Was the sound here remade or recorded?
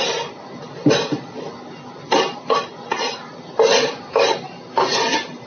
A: recorded